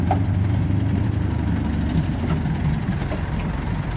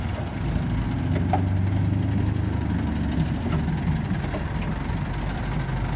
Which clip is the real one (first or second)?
second